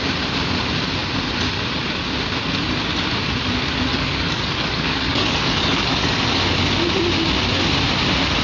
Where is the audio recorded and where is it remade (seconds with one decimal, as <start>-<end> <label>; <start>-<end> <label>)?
0.0-3.9 recorded; 3.9-6.2 remade; 6.2-8.4 recorded